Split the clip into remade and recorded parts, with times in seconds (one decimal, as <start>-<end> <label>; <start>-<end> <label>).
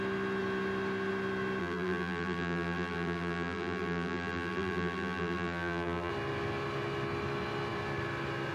0.0-1.6 recorded; 1.6-6.1 remade; 6.1-8.5 recorded